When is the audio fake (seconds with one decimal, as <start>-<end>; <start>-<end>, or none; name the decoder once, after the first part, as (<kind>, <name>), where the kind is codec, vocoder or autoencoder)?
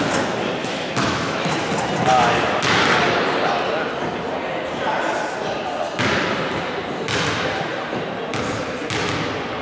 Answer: 0.6-1.7 (autoencoder, DAC-VAE)